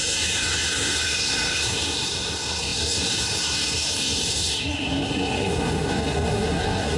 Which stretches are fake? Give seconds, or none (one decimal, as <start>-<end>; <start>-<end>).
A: 0.0-7.0